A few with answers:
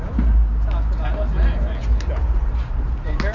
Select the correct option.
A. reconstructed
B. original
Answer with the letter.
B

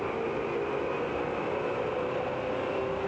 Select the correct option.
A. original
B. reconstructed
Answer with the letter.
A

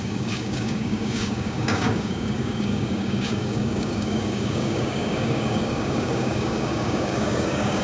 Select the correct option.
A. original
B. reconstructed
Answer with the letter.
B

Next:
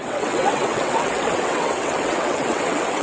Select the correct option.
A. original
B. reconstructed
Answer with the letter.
B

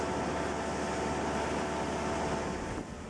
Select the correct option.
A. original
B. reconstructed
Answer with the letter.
A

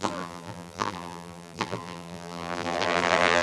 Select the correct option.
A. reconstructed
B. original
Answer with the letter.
A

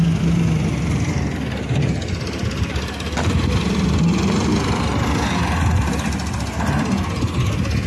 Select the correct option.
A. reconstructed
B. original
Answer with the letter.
B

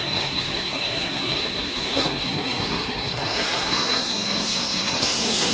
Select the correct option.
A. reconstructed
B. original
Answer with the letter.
A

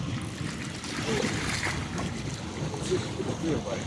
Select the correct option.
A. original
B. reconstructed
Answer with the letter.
A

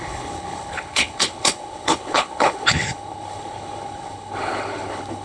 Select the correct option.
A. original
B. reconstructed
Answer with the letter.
B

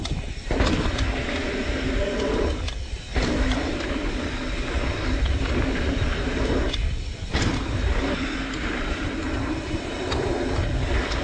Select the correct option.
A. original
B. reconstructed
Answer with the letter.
B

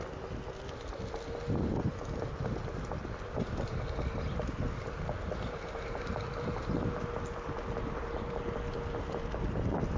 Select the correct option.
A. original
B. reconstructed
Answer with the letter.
A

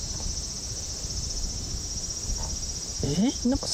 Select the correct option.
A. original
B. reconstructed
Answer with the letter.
A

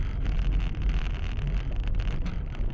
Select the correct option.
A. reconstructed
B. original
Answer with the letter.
B